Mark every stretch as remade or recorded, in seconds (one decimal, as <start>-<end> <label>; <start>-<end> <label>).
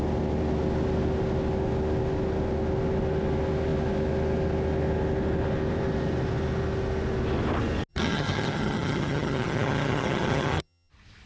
0.0-7.9 recorded; 7.9-10.9 remade; 10.9-11.3 recorded